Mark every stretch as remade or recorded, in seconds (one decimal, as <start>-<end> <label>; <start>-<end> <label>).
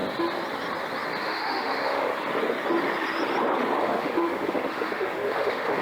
0.0-1.2 recorded; 1.2-2.1 remade; 2.1-3.8 recorded; 3.8-5.8 remade